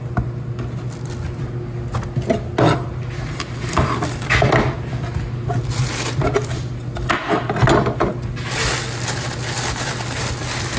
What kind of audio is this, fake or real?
real